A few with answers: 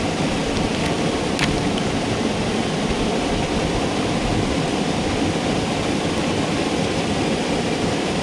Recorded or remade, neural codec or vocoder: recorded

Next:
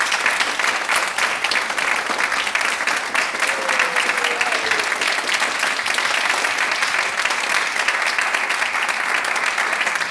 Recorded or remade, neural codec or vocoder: recorded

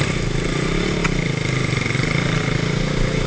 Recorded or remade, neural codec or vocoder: recorded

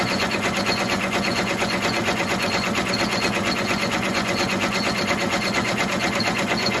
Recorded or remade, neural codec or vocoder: remade, vocoder, Vocos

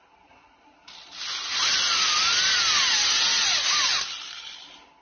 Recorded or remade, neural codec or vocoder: recorded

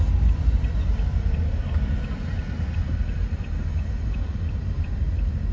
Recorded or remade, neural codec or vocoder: recorded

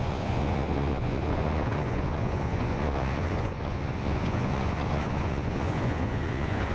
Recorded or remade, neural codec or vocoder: remade, vocoder, Vocos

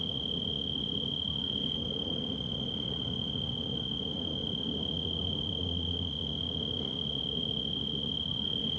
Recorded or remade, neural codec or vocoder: remade, vocoder, Vocos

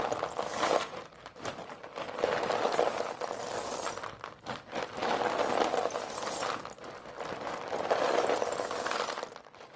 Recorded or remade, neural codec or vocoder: recorded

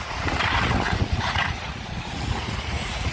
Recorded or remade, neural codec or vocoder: remade, vocoder, Vocos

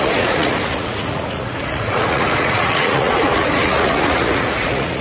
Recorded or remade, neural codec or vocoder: remade, vocoder, Vocos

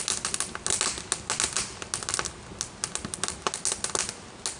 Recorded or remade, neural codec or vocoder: recorded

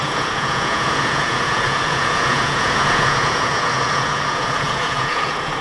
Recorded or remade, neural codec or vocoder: remade, vocoder, Vocos